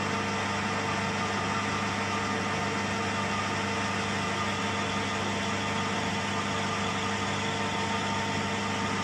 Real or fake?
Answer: real